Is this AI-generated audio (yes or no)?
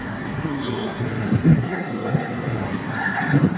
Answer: yes